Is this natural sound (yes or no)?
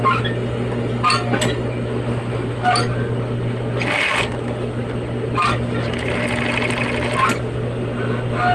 yes